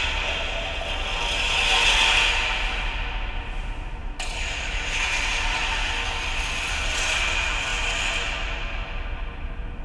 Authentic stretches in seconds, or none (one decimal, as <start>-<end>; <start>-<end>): 0.0-9.8